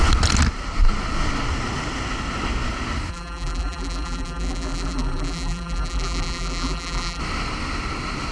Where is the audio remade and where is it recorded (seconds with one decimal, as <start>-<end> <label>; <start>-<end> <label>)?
0.0-3.1 recorded; 3.1-7.2 remade; 7.2-8.3 recorded